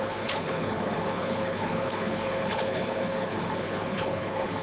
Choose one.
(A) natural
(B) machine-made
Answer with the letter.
B